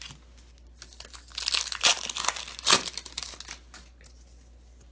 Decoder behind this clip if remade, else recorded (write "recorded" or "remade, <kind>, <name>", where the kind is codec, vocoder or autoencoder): recorded